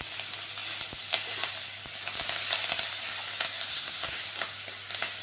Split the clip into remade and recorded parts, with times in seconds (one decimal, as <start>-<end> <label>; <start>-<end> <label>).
0.0-3.7 recorded; 3.7-4.2 remade; 4.2-5.2 recorded